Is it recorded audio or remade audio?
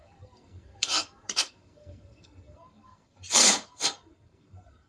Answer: remade